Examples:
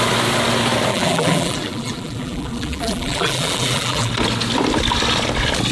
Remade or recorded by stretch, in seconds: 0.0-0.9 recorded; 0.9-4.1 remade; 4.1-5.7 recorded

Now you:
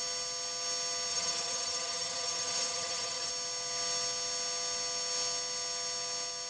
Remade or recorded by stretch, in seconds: 0.0-1.1 recorded; 1.1-3.3 remade; 3.3-6.5 recorded

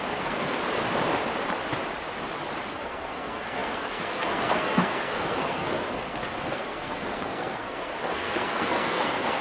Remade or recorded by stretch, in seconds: 0.0-0.6 remade; 0.6-2.7 recorded; 2.7-9.4 remade

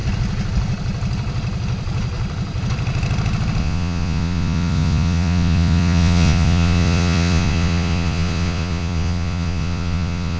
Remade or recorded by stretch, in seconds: 0.0-3.6 recorded; 3.6-10.4 remade

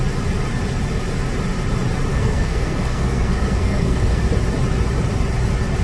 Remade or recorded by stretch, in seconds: 0.0-2.1 recorded; 2.1-4.3 remade; 4.3-5.8 recorded